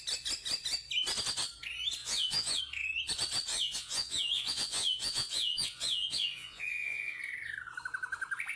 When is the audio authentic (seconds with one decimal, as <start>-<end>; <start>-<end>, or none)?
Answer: 0.0-2.0; 2.6-3.5; 7.2-8.6